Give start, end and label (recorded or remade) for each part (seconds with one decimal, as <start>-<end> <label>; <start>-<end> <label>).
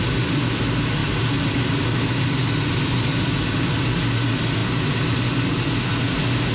0.0-1.0 recorded; 1.0-1.7 remade; 1.7-4.6 recorded; 4.6-5.4 remade; 5.4-6.5 recorded